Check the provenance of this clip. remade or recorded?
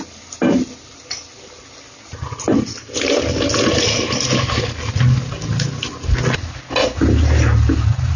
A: recorded